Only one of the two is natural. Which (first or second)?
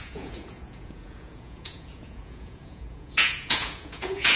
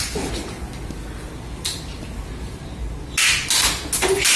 second